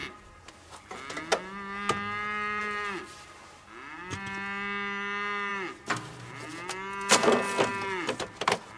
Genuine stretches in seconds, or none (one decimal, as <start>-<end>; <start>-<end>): 0.0-8.8